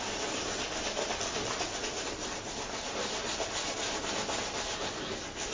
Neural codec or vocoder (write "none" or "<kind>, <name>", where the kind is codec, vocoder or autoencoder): none